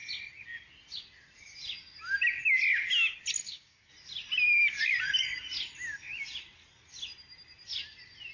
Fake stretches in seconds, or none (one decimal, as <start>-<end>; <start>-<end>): 3.4-3.9